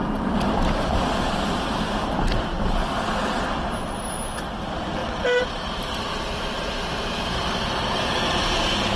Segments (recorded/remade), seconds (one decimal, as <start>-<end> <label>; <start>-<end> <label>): 0.0-2.8 remade; 2.8-4.6 recorded; 4.6-9.0 remade